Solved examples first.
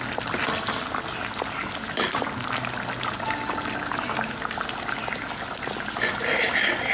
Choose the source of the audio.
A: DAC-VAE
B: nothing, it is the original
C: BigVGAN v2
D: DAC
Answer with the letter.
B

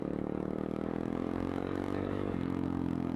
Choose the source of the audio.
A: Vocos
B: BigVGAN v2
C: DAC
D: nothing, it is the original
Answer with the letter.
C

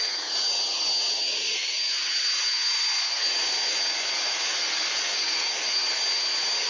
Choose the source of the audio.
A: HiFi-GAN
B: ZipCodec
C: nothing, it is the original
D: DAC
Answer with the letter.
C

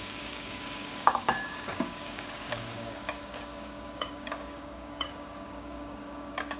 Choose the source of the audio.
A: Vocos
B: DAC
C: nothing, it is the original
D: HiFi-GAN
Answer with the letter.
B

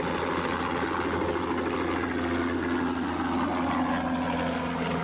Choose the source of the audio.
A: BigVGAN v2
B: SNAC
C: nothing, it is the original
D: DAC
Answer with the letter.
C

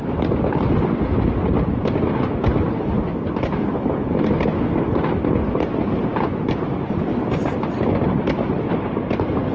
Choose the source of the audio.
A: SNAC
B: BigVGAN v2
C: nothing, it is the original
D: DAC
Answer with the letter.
C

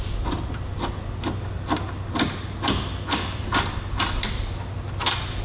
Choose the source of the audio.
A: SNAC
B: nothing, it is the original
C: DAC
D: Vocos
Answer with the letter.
B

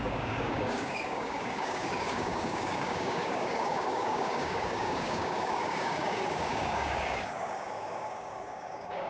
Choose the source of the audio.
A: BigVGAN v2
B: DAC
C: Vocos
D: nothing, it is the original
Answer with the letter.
B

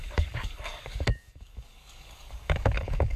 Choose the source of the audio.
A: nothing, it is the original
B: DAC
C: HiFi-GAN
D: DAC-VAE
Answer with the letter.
B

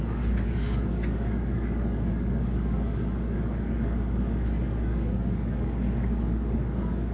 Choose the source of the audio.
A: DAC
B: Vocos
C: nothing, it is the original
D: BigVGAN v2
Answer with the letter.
A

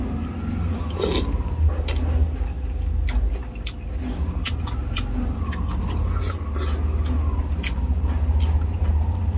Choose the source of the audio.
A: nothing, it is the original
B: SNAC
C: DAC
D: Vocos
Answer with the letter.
A